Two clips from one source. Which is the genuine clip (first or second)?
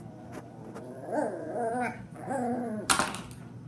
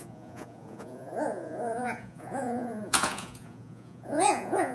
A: first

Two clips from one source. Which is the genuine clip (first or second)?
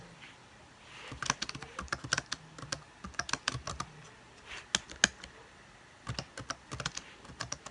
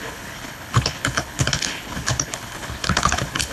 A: first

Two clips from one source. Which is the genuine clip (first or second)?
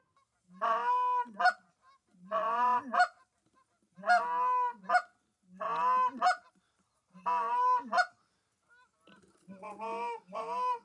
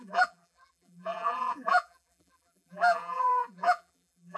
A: first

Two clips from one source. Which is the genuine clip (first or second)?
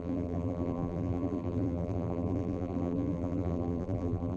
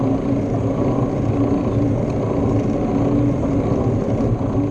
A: second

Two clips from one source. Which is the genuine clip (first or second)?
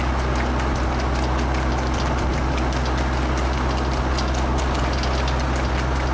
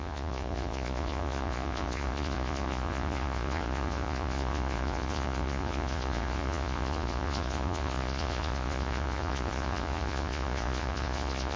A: first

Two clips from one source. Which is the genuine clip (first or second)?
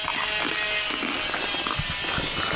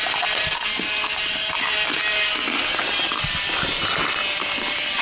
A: first